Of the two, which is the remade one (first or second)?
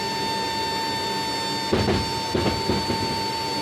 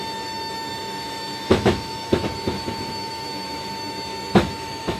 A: second